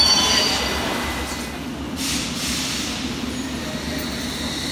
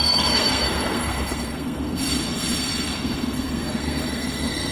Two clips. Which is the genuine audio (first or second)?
first